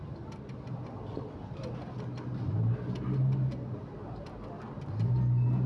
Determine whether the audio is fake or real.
real